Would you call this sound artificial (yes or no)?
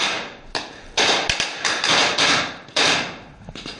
no